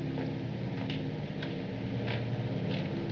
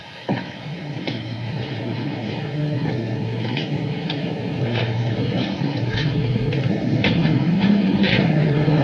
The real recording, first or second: first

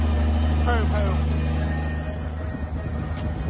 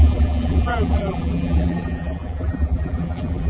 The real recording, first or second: first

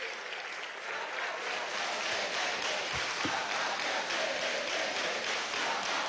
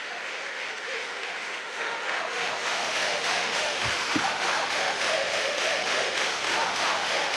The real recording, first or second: first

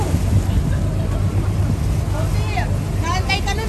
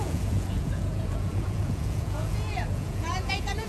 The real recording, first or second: first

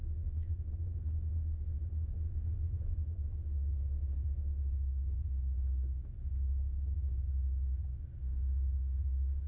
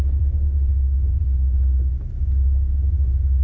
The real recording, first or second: second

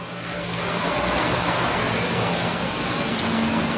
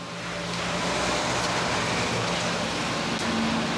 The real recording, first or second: second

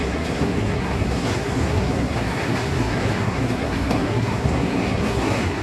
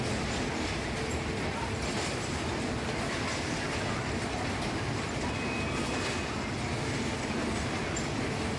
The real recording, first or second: second